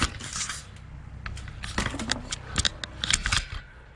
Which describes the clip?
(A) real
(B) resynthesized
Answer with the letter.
A